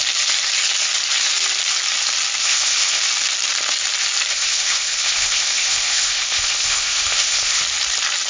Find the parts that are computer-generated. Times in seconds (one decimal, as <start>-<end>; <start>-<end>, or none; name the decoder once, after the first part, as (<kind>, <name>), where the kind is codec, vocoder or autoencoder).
2.4-3.0 (codec, ZipCodec); 4.3-7.6